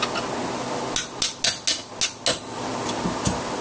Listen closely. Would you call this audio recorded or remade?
recorded